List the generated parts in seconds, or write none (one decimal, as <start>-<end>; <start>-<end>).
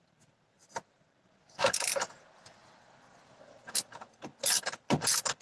0.6-2.1